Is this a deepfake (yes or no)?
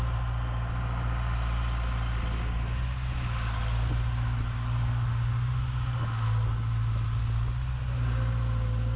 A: no